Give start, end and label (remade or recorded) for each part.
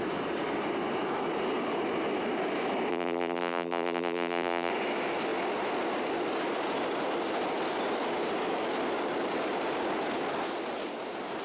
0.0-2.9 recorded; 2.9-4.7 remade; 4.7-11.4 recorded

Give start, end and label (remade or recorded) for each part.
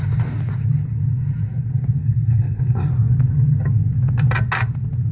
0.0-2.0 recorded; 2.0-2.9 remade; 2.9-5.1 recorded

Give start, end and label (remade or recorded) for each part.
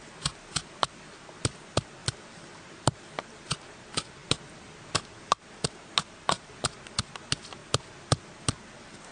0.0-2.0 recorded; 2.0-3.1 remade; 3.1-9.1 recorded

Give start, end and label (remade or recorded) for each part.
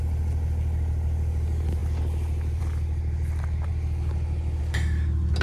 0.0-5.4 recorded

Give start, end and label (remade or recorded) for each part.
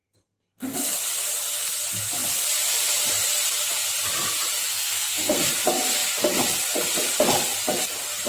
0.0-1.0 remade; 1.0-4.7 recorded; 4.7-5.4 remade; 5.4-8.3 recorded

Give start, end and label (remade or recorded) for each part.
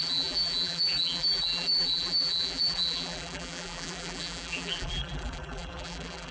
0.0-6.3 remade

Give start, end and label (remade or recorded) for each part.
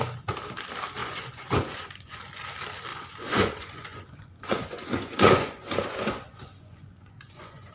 0.0-1.0 recorded; 1.0-2.2 remade; 2.2-2.9 recorded; 2.9-7.7 remade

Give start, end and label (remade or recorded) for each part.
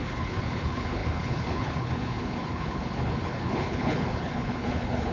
0.0-5.1 remade